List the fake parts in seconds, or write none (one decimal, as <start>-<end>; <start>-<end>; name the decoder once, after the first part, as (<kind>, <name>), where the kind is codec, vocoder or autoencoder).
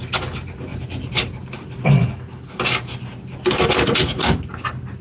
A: none